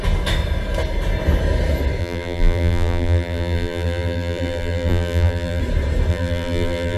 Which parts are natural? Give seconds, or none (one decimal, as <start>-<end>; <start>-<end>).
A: 0.0-2.0; 5.6-6.1